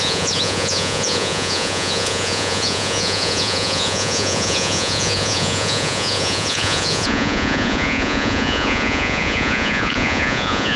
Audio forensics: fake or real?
fake